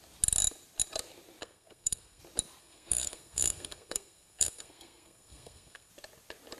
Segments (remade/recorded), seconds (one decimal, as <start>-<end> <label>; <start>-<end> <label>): 0.0-1.4 recorded; 1.4-2.2 remade; 2.2-2.6 recorded; 2.6-5.9 remade; 5.9-6.6 recorded

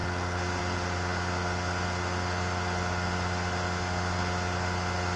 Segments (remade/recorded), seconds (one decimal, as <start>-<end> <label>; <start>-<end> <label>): 0.0-5.2 recorded

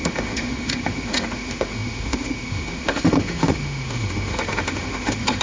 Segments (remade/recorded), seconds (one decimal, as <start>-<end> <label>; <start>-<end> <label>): 0.0-5.4 remade

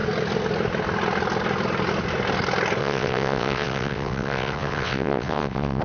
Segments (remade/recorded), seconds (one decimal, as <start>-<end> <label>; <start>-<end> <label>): 0.0-2.8 recorded; 2.8-5.8 remade

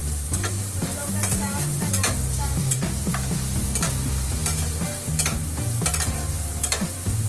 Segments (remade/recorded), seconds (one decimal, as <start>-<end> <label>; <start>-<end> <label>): 0.0-3.1 remade; 3.1-7.3 recorded

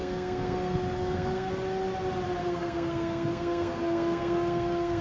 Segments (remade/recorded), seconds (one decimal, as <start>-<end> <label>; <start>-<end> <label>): 0.0-1.5 remade; 1.5-2.4 recorded; 2.4-5.0 remade